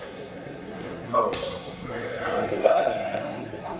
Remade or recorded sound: remade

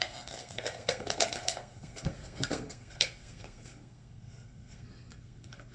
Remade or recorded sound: remade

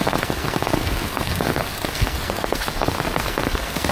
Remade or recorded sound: remade